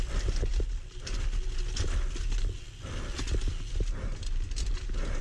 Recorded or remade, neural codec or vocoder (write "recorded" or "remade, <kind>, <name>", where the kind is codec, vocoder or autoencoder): recorded